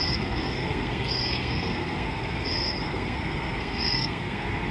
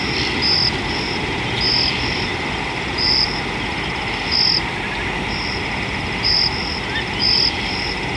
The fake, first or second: first